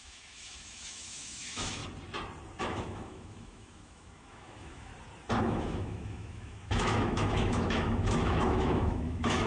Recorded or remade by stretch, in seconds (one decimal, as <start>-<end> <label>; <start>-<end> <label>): 0.0-1.8 remade; 1.8-2.6 recorded; 2.6-4.9 remade; 4.9-5.4 recorded; 5.4-9.5 remade